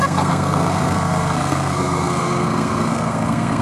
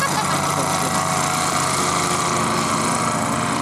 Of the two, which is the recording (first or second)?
second